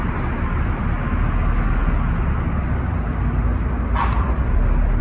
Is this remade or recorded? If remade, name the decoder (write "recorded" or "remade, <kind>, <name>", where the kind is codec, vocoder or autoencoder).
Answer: recorded